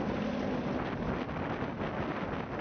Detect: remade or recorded recorded